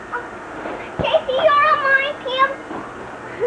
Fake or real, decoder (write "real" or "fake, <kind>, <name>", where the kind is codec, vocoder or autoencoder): real